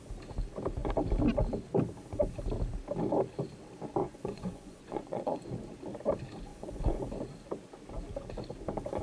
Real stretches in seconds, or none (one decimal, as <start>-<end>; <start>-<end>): 0.0-4.0; 5.5-6.5; 7.0-9.0